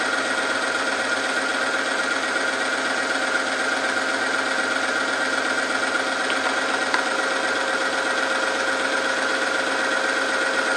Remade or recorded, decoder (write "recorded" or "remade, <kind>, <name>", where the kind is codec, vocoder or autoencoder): recorded